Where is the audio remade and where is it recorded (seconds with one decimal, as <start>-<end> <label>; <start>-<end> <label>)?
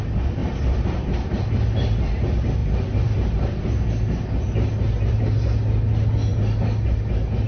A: 0.0-0.4 recorded; 0.4-1.5 remade; 1.5-2.6 recorded; 2.6-5.1 remade; 5.1-7.5 recorded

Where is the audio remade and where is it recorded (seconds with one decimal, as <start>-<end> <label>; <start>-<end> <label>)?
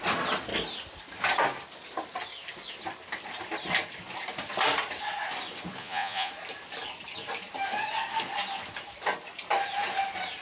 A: 0.0-5.8 recorded; 5.8-6.3 remade; 6.3-10.4 recorded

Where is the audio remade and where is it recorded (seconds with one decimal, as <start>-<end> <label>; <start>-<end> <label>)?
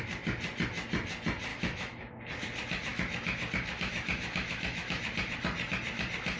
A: 0.0-1.5 recorded; 1.5-2.1 remade; 2.1-2.9 recorded; 2.9-5.0 remade; 5.0-6.4 recorded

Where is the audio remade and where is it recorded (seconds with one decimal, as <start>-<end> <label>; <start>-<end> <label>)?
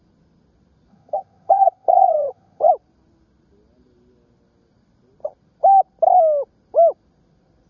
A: 0.0-0.9 recorded; 0.9-2.7 remade; 2.7-7.7 recorded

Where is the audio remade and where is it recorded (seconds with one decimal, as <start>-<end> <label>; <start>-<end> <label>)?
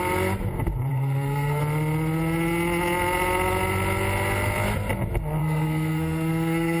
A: 0.0-0.9 recorded; 0.9-1.6 remade; 1.6-5.4 recorded; 5.4-6.8 remade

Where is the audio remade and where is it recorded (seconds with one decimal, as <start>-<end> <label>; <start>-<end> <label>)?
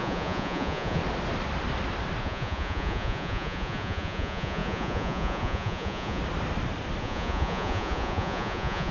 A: 0.0-1.0 remade; 1.0-2.2 recorded; 2.2-6.2 remade; 6.2-7.0 recorded; 7.0-8.9 remade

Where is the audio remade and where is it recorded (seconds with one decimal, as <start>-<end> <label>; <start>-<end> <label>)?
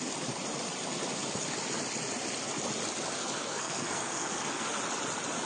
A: 0.0-3.2 recorded; 3.2-4.8 remade; 4.8-5.5 recorded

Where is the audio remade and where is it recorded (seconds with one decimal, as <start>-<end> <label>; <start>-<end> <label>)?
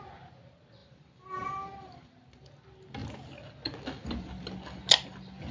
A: 0.0-0.8 recorded; 0.8-2.1 remade; 2.1-5.5 recorded